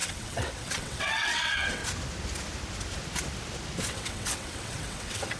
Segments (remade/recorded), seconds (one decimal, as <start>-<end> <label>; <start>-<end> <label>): 0.0-1.8 remade; 1.8-3.9 recorded; 3.9-5.4 remade